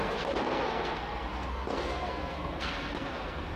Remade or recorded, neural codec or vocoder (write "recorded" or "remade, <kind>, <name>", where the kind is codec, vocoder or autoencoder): remade, codec, SNAC